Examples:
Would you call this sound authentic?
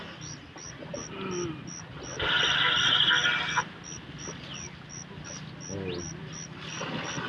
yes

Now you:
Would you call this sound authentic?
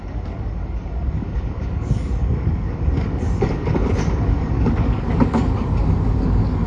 no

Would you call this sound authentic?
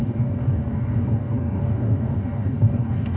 no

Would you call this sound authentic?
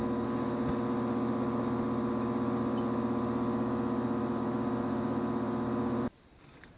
yes